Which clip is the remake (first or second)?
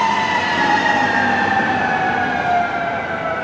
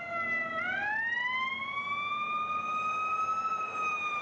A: first